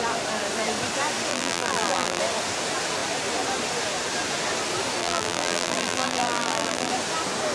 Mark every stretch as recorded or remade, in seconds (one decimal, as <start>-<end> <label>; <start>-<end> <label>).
0.0-1.3 recorded; 1.3-2.2 remade; 2.2-5.0 recorded; 5.0-6.9 remade; 6.9-7.5 recorded